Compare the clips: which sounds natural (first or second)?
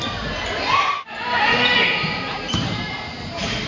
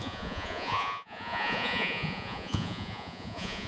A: first